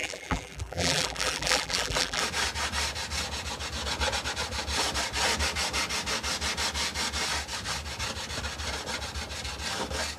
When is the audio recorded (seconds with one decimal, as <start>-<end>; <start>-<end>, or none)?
2.2-10.2